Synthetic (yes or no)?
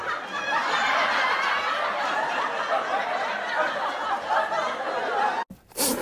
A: no